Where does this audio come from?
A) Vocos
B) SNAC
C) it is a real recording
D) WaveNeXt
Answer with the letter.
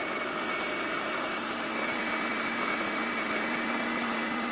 C